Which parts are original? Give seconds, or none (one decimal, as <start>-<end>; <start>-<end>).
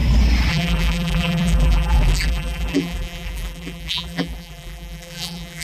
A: 0.0-0.5